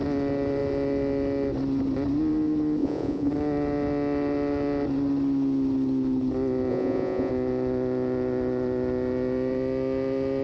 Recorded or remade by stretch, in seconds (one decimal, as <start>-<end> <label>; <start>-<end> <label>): 0.0-2.8 recorded; 2.8-3.3 remade; 3.3-6.7 recorded; 6.7-7.3 remade; 7.3-10.4 recorded